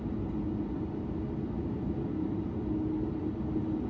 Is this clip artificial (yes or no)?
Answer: no